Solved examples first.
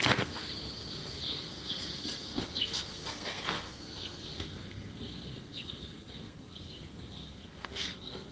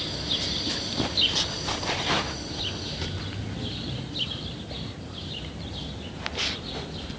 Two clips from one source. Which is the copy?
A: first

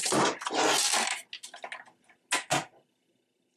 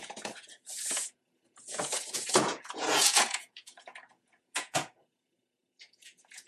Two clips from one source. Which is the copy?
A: second